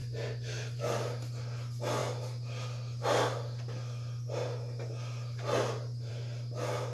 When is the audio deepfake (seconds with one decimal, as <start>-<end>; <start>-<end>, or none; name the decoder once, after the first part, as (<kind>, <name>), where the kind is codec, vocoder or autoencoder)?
none